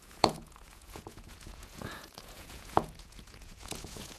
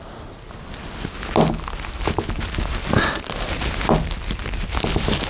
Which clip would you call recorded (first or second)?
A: second